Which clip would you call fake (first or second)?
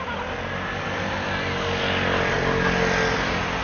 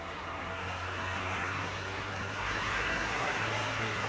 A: second